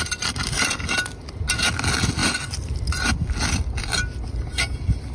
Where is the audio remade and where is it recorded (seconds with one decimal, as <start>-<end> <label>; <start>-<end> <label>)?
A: 0.0-5.1 recorded